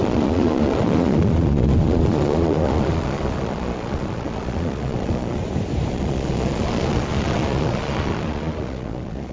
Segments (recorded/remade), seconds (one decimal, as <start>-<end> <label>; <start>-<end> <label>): 0.0-5.4 remade; 5.4-5.9 recorded; 5.9-9.3 remade